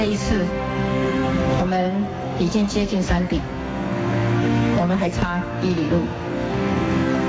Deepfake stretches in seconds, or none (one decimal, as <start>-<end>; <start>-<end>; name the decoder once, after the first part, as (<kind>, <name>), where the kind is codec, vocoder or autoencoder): 0.0-7.3 (codec, SNAC)